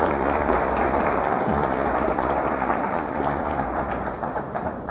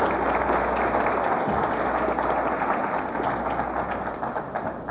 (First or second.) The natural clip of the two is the second